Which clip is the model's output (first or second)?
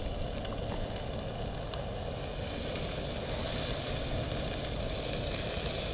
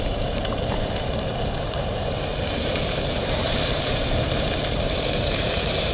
second